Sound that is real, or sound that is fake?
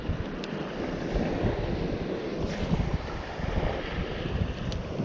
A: fake